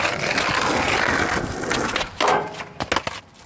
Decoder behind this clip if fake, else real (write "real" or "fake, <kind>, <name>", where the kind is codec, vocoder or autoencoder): real